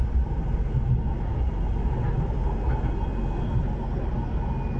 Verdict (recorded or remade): recorded